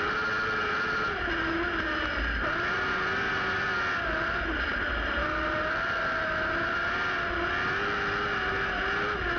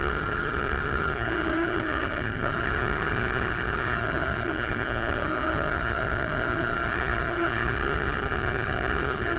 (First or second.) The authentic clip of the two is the first